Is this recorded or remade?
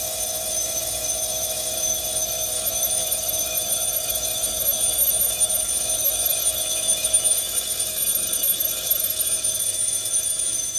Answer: remade